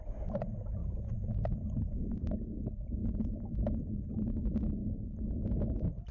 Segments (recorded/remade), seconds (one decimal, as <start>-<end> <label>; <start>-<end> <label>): 0.0-6.1 recorded